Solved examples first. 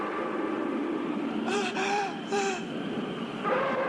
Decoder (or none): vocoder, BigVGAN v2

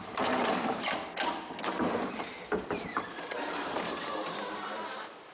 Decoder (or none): vocoder, BigVGAN v2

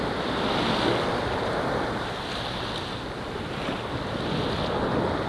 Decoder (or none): none